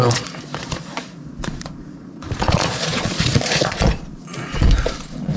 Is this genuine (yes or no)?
no